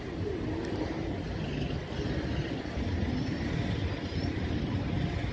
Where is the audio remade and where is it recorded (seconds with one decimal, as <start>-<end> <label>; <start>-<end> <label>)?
0.0-5.3 recorded